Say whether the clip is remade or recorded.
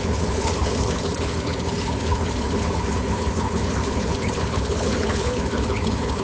remade